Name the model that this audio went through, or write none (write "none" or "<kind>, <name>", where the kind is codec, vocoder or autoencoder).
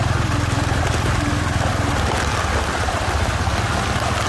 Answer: none